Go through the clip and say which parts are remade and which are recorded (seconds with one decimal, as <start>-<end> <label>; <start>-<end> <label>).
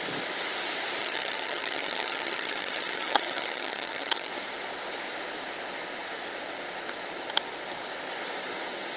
0.0-1.0 recorded; 1.0-4.3 remade; 4.3-9.0 recorded